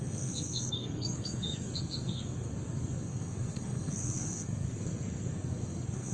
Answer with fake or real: fake